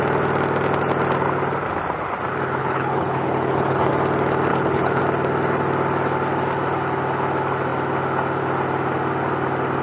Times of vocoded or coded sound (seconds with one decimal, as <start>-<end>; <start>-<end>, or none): 2.6-3.9; 4.5-5.0